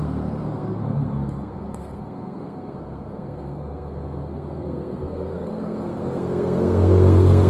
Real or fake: fake